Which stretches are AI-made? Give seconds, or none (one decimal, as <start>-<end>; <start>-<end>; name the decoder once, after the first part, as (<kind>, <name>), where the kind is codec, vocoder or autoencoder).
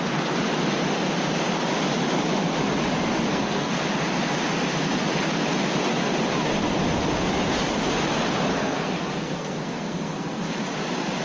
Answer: 3.3-3.8 (codec, SNAC); 8.5-10.4